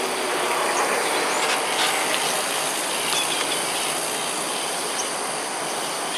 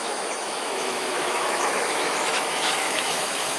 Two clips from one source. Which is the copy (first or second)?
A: second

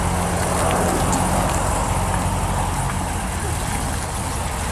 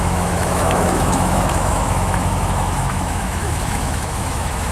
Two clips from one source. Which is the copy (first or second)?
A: second